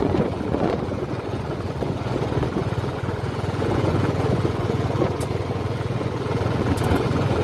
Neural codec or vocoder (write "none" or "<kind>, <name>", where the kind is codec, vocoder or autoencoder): vocoder, Vocos